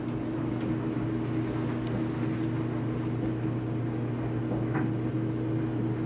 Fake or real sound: real